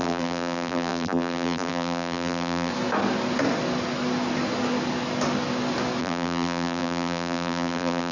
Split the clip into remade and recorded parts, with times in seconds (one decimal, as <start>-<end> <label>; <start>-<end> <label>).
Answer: 0.0-2.7 remade; 2.7-6.0 recorded; 6.0-8.1 remade